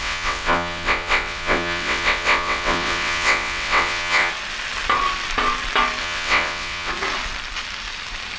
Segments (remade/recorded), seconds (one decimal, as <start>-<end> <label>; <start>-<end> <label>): 0.0-4.3 remade; 4.3-6.0 recorded; 6.0-6.9 remade; 6.9-8.4 recorded